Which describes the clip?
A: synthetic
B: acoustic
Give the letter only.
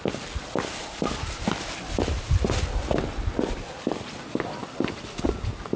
B